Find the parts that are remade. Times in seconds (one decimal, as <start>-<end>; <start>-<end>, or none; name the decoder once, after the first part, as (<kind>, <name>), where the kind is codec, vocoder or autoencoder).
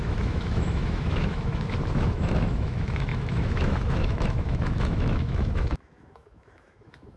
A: 0.0-7.2 (autoencoder, DAC-VAE)